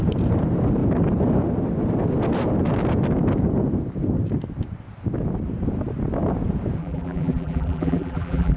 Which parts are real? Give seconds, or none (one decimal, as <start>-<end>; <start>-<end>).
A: 0.0-6.8